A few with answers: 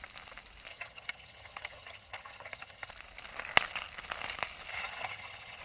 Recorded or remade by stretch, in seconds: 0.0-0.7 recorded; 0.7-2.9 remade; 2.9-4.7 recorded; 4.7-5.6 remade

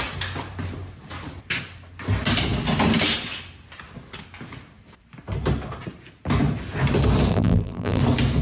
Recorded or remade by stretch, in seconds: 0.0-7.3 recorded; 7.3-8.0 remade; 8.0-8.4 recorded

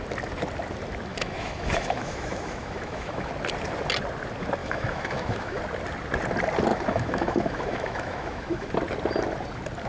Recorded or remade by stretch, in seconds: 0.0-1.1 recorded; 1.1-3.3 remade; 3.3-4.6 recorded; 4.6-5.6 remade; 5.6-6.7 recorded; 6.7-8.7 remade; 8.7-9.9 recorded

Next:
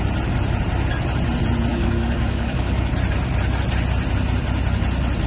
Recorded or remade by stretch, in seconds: 0.0-1.7 recorded; 1.7-2.9 remade; 2.9-5.3 recorded